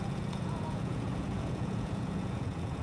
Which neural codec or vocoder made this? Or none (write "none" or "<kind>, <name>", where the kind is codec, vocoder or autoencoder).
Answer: vocoder, Vocos